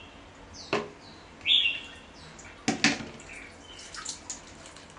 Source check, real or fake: real